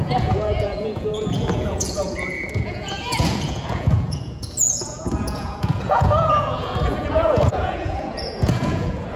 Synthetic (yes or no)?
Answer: yes